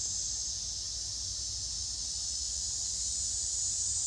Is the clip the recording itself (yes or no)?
yes